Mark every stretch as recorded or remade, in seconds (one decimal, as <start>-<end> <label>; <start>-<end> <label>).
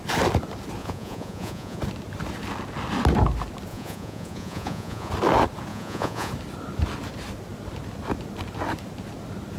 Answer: 0.0-0.8 recorded; 0.8-1.8 remade; 1.8-3.7 recorded; 3.7-5.1 remade; 5.1-5.7 recorded; 5.7-6.3 remade; 6.3-9.6 recorded